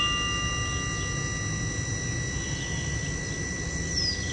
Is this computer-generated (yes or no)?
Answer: no